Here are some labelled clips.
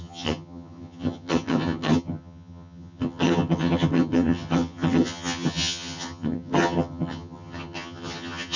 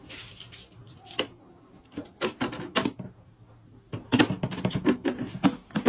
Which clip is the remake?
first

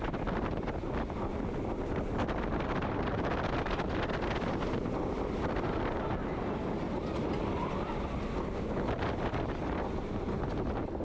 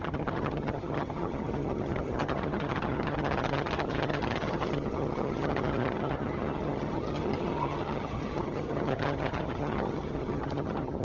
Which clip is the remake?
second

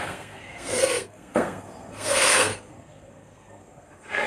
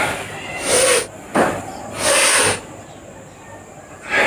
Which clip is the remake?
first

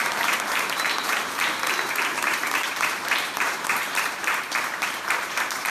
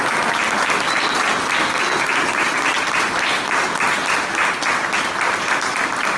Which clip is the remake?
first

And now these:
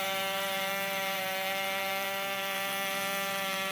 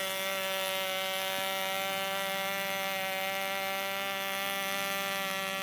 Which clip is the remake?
first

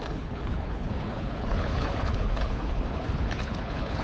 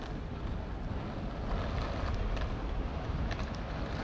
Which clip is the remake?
first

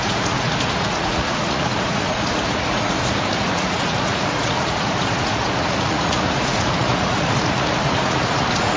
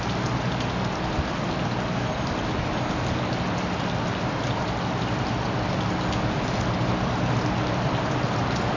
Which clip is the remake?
first